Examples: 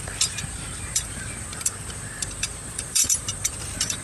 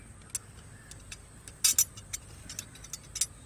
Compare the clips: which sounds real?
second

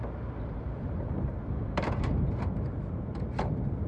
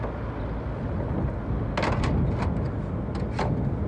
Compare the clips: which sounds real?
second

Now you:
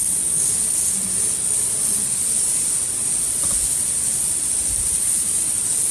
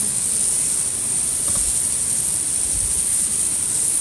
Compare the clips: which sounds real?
second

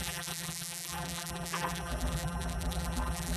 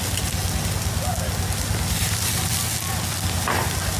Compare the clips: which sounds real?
second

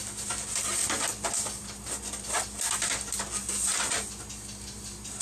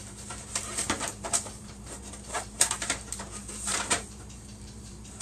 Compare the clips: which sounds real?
first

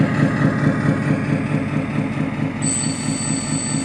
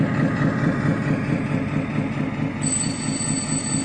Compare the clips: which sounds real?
first